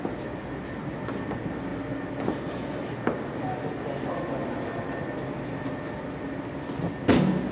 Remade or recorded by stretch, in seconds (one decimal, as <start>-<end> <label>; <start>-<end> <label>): 0.0-7.5 recorded